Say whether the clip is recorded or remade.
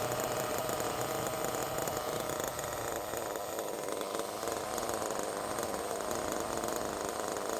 remade